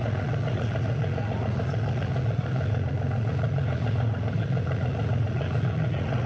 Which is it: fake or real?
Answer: fake